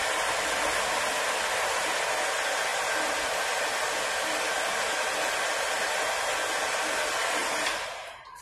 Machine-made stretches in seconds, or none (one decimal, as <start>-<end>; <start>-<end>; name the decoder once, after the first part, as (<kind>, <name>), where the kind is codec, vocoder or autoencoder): 7.4-8.4 (vocoder, BigVGAN v2)